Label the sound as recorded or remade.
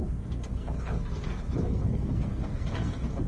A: remade